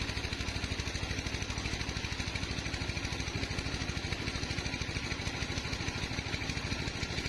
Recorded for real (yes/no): yes